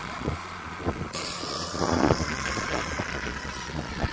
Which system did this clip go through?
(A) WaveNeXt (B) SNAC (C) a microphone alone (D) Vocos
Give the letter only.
D